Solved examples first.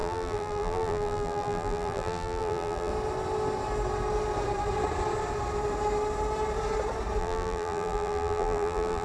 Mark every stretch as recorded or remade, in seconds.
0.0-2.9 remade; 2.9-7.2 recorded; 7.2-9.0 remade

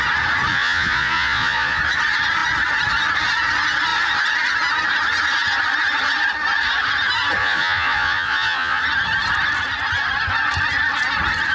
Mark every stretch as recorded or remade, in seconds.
0.0-0.5 recorded; 0.5-1.8 remade; 1.8-7.4 recorded; 7.4-8.8 remade; 8.8-11.5 recorded

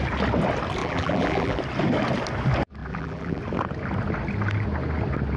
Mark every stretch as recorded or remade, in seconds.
0.0-0.8 recorded; 0.8-1.6 remade; 1.6-2.8 recorded; 2.8-3.4 remade; 3.4-5.4 recorded

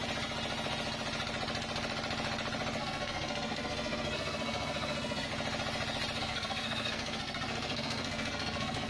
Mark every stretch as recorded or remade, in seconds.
0.0-2.8 recorded; 2.8-5.3 remade; 5.3-6.2 recorded; 6.2-8.9 remade